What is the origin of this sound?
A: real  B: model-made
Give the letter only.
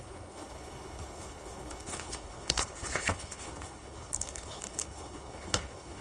B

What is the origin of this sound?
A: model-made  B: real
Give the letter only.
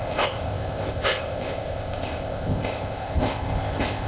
A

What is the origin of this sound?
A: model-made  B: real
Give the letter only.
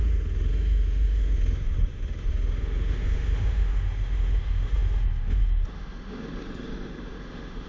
A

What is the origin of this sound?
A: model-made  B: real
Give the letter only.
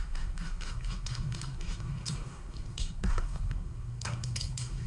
A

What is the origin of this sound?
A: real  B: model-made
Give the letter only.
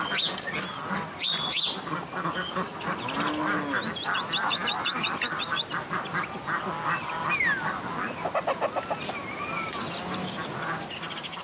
A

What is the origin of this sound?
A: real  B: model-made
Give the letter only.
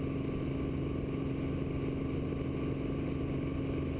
A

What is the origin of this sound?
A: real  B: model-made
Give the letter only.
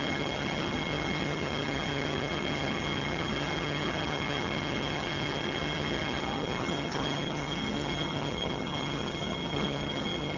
B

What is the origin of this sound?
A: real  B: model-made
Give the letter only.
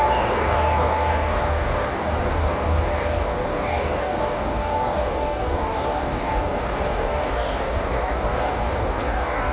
B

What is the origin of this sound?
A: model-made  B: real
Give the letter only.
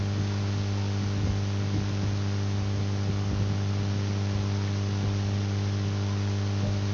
B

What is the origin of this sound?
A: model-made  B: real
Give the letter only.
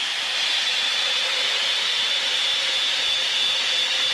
B